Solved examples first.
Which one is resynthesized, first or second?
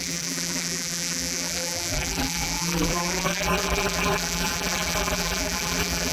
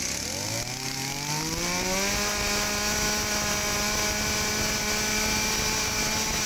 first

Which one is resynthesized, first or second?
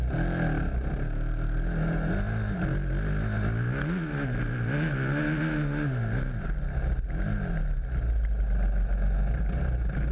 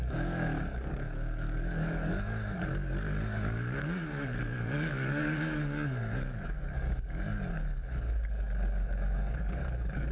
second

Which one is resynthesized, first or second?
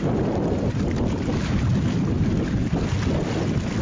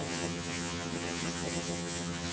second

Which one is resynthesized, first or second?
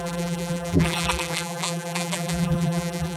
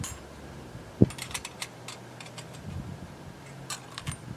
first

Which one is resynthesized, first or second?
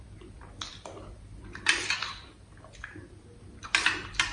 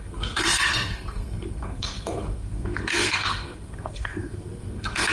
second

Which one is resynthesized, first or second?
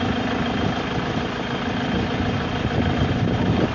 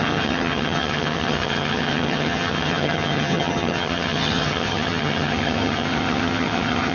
second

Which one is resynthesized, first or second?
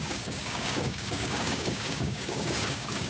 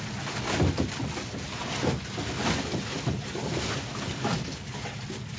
first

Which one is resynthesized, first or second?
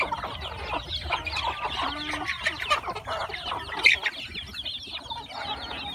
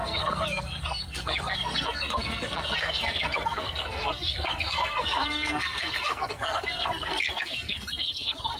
second